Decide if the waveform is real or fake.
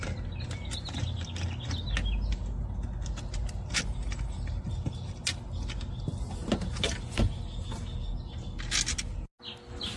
real